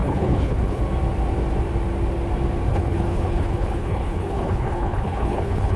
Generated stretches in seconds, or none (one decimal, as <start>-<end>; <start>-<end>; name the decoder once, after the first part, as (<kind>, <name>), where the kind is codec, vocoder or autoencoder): 0.0-0.8 (codec, HILCodec); 2.7-5.8